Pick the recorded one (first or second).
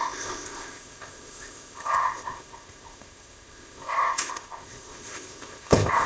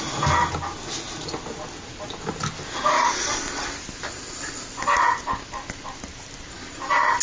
second